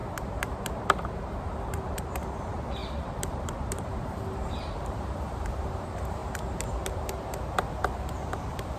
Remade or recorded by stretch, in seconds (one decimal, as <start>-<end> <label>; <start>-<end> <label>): 0.0-6.2 remade; 6.2-8.2 recorded; 8.2-8.8 remade